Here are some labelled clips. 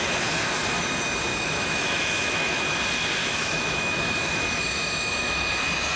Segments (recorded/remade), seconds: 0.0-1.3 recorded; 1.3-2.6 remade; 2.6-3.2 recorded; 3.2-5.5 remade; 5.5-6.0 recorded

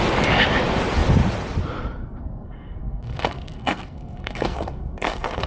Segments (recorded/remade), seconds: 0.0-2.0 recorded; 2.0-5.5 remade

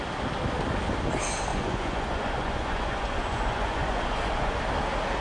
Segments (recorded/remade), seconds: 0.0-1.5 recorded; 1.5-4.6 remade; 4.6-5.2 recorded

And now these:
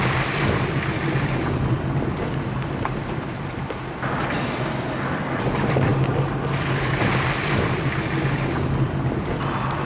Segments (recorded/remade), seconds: 0.0-5.2 remade; 5.2-9.8 recorded

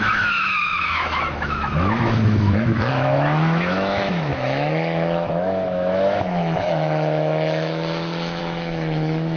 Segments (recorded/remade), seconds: 0.0-9.4 remade

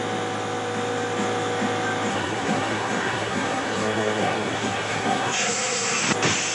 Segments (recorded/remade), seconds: 0.0-2.1 recorded; 2.1-6.0 remade; 6.0-6.5 recorded

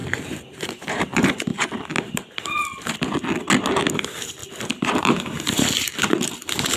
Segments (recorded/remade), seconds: 0.0-1.5 remade; 1.5-3.9 recorded; 3.9-4.4 remade; 4.4-4.9 recorded; 4.9-6.8 remade